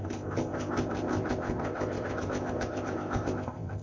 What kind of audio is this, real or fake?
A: fake